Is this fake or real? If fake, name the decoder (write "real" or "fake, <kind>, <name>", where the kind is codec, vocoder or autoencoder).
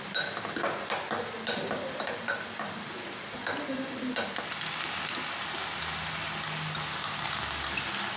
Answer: real